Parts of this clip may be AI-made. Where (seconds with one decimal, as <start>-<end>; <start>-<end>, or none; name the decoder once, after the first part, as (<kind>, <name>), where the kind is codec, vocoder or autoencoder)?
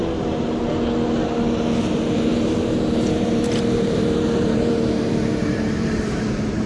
1.8-6.7 (vocoder, BigVGAN v2)